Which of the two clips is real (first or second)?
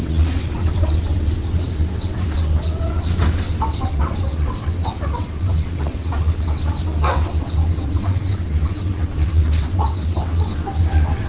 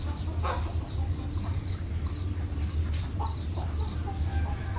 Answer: second